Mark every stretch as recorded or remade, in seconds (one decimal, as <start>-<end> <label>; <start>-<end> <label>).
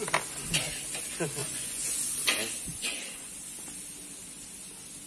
0.0-1.4 recorded; 1.4-2.0 remade; 2.0-2.7 recorded; 2.7-3.3 remade; 3.3-5.1 recorded